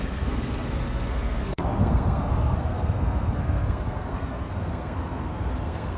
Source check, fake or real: fake